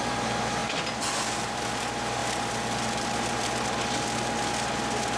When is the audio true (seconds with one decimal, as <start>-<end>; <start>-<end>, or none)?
0.0-5.2